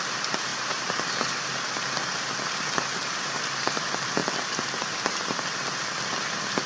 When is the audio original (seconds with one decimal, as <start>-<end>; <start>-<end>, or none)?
0.5-3.6; 4.2-6.0